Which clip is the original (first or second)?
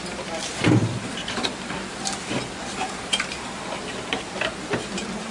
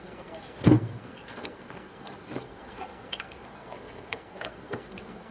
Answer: first